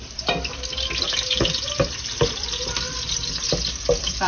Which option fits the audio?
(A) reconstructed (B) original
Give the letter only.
A